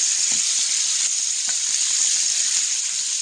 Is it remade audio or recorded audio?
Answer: recorded